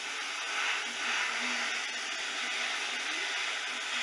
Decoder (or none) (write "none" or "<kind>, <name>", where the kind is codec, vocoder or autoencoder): none